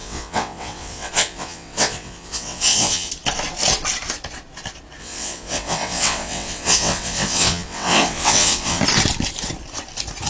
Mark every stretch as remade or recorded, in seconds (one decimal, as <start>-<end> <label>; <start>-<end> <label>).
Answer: 0.0-3.1 remade; 3.1-5.0 recorded; 5.0-8.8 remade; 8.8-10.3 recorded